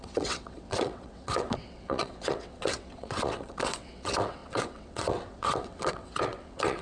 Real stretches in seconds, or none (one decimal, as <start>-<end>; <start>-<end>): none